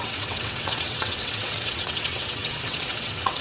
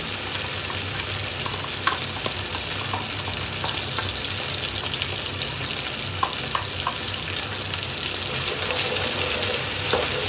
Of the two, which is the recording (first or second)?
second